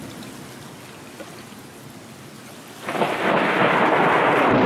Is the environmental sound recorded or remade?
recorded